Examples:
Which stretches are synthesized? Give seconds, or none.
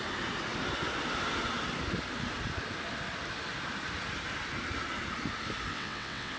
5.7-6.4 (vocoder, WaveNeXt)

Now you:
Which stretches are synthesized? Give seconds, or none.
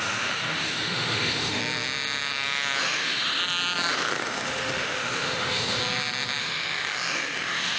0.0-1.6 (autoencoder, DAC-VAE); 2.8-3.4; 3.9-5.8; 6.4-7.8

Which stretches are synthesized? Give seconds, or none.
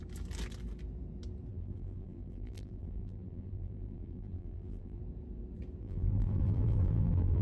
1.5-5.0 (vocoder, BigVGAN v2); 5.8-7.4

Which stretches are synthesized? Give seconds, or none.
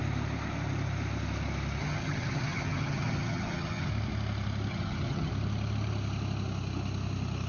1.8-3.9 (vocoder, HiFi-GAN); 4.7-5.3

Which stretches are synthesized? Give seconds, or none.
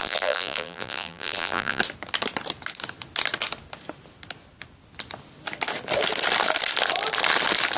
0.0-1.8 (vocoder, BigVGAN v2)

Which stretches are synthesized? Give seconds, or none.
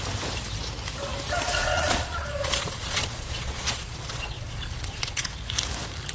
1.6-5.3 (vocoder, Vocos)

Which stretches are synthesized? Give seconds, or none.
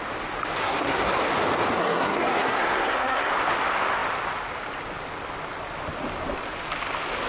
0.6-1.1 (codec, SNAC); 1.8-3.3